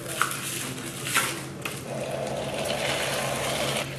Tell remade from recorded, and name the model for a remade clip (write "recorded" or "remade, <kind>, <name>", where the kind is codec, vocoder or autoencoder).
recorded